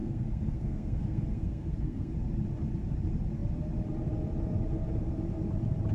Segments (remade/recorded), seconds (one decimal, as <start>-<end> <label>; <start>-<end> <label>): 0.0-2.1 remade; 2.1-5.9 recorded